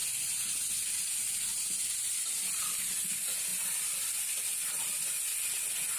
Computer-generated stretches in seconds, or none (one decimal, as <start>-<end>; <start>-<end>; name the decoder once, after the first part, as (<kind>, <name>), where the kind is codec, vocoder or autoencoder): none